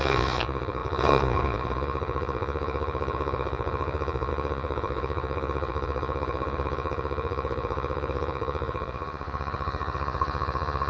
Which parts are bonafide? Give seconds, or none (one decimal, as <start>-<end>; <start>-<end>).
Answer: none